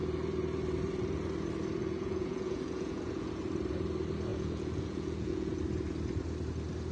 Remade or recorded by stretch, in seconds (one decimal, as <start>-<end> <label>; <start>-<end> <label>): 0.0-1.8 recorded; 1.8-3.4 remade; 3.4-4.3 recorded; 4.3-5.6 remade; 5.6-6.9 recorded